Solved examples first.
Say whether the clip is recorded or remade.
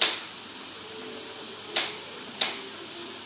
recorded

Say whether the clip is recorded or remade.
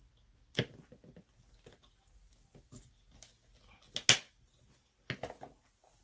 recorded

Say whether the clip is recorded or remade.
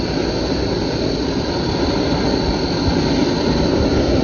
recorded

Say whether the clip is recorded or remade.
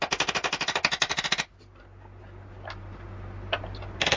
recorded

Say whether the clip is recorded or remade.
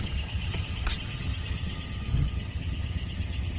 remade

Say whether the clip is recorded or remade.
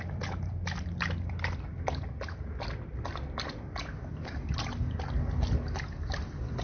recorded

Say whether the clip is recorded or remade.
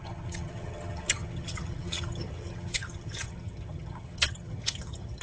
remade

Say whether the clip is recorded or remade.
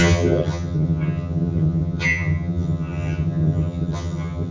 remade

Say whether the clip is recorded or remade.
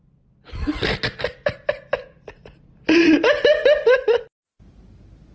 recorded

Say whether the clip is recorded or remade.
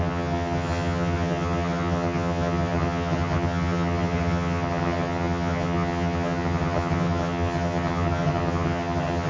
remade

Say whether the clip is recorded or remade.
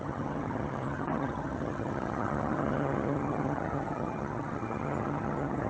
remade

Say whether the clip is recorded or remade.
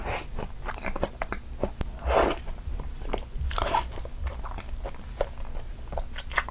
recorded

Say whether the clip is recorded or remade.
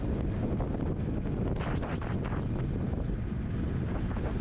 recorded